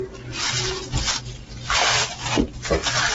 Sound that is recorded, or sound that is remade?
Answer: recorded